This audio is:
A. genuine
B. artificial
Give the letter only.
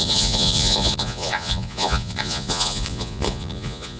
B